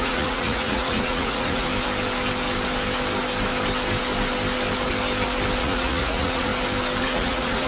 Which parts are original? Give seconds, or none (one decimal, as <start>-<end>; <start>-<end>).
1.7-5.6; 6.5-7.0